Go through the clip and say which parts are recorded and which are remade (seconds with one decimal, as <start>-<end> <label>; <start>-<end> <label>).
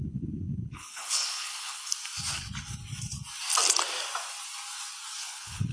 0.0-1.9 remade; 1.9-5.2 recorded; 5.2-5.7 remade